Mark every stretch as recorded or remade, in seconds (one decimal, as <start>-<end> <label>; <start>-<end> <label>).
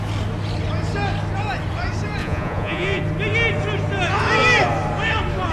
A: 0.0-2.2 recorded; 2.2-3.0 remade; 3.0-5.5 recorded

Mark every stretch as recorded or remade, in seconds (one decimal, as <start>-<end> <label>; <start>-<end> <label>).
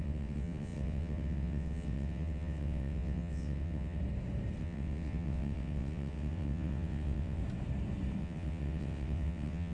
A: 0.0-4.0 remade; 4.0-4.6 recorded; 4.6-7.4 remade; 7.4-8.2 recorded; 8.2-9.7 remade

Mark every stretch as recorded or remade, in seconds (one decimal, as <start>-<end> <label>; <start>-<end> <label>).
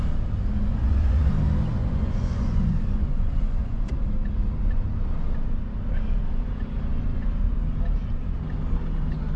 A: 0.0-0.7 recorded; 0.7-1.3 remade; 1.3-1.8 recorded; 1.8-3.9 remade; 3.9-9.4 recorded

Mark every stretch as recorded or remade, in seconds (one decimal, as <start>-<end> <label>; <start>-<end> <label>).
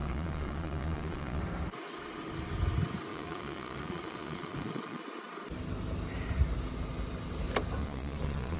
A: 0.0-1.4 remade; 1.4-3.1 recorded; 3.1-5.0 remade; 5.0-7.8 recorded; 7.8-8.6 remade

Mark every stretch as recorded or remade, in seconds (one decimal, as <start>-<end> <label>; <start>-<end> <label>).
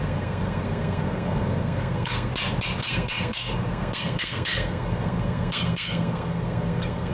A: 0.0-2.3 remade; 2.3-2.8 recorded; 2.8-7.1 remade